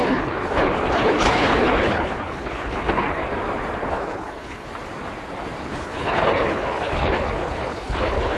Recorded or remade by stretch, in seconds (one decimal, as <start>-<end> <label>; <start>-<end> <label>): 0.0-3.2 remade; 3.2-3.9 recorded; 3.9-4.7 remade; 4.7-5.6 recorded; 5.6-8.4 remade